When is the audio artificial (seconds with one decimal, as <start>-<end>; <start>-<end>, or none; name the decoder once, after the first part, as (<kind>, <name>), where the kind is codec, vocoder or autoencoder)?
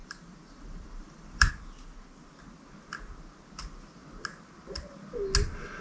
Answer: 0.0-1.5 (vocoder, BigVGAN v2)